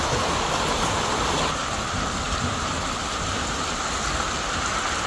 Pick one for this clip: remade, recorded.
remade